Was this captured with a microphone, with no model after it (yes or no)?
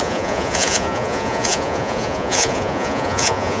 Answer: no